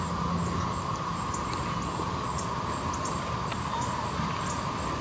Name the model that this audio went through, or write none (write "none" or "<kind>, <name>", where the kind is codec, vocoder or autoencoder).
none